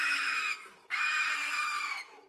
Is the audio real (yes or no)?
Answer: no